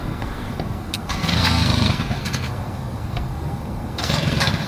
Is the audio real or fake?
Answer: fake